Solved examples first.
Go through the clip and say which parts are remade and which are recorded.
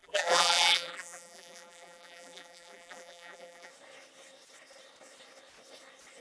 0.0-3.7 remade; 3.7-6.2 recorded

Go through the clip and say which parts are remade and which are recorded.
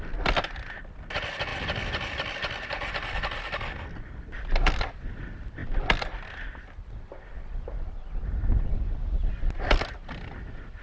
0.0-10.8 recorded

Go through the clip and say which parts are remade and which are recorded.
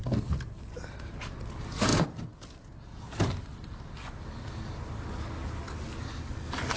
0.0-6.8 recorded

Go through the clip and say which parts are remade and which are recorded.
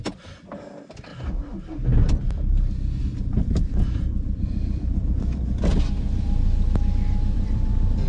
0.0-1.1 remade; 1.1-3.0 recorded; 3.0-5.7 remade; 5.7-6.2 recorded; 6.2-8.1 remade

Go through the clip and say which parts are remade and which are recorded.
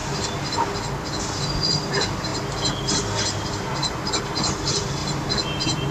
0.0-1.4 recorded; 1.4-2.3 remade; 2.3-3.4 recorded; 3.4-5.0 remade; 5.0-5.9 recorded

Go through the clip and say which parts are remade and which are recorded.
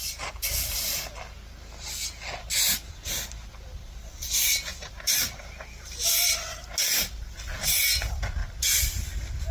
0.0-4.7 recorded; 4.7-6.0 remade; 6.0-8.4 recorded; 8.4-9.0 remade; 9.0-9.5 recorded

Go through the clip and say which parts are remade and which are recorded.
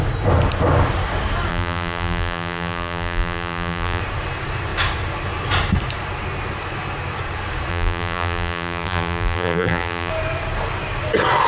0.0-1.5 recorded; 1.5-4.0 remade; 4.0-7.7 recorded; 7.7-10.1 remade; 10.1-11.5 recorded